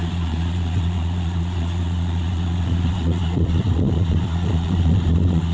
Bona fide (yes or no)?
no